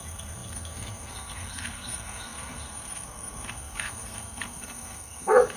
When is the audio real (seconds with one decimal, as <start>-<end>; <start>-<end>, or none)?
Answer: none